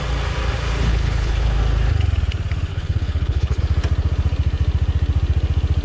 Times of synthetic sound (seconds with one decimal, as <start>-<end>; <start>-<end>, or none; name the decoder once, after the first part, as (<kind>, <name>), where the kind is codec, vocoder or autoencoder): 0.9-1.6 (codec, HILCodec); 2.7-3.6